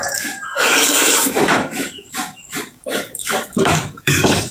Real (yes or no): no